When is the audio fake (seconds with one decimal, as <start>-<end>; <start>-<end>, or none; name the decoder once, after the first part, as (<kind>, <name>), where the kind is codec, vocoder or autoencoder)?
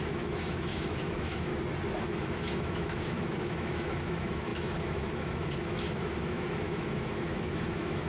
0.0-1.5 (autoencoder, DAC-VAE); 2.0-8.1